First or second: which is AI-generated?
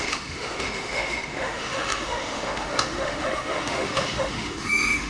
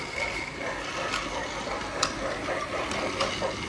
first